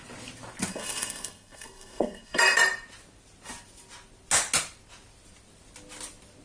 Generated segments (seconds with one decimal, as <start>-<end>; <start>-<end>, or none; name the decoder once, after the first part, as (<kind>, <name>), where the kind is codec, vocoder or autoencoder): 0.7-2.4 (codec, SNAC)